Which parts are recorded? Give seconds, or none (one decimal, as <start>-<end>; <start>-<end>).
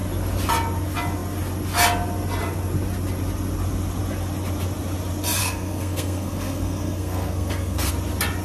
0.0-5.4; 7.9-8.4